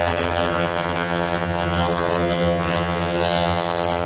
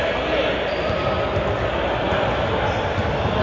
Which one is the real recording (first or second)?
second